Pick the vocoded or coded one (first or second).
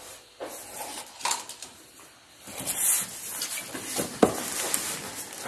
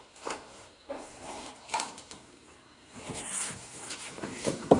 second